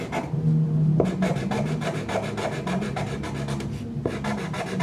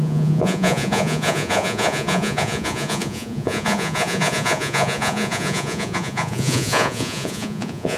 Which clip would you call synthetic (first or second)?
second